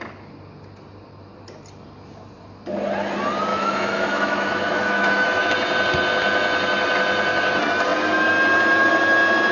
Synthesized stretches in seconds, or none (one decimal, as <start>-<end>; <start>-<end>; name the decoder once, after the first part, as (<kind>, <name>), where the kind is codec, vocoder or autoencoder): 3.5-5.5 (autoencoder, DAC-VAE)